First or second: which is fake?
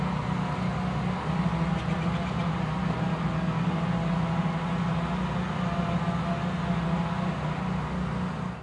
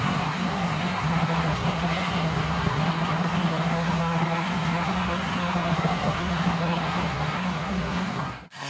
second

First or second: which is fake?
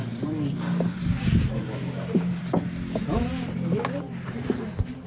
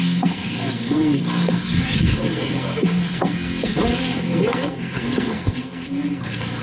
second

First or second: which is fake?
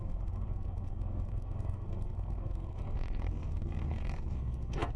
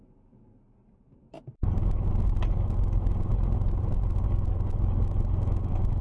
first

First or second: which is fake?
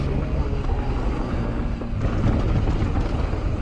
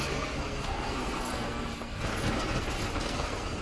second